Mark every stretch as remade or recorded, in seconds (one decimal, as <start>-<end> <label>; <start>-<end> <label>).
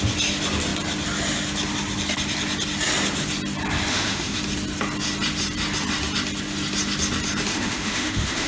0.0-3.9 recorded; 3.9-4.4 remade; 4.4-7.5 recorded; 7.5-8.5 remade